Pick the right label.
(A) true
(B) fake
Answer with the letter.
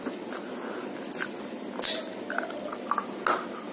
A